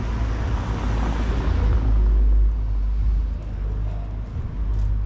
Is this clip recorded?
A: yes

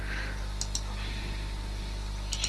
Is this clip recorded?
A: yes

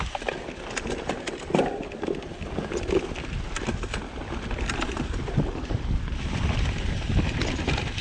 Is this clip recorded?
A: yes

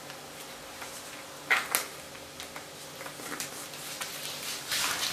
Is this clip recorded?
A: yes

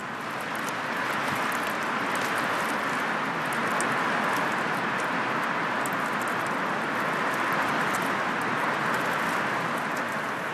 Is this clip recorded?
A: yes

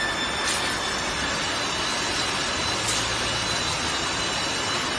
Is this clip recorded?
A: yes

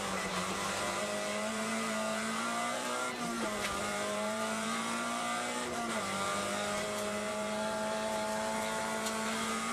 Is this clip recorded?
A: no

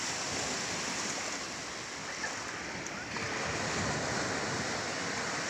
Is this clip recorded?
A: yes